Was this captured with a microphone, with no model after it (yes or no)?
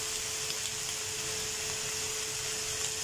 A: yes